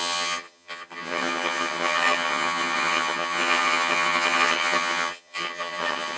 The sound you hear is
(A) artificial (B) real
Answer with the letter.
A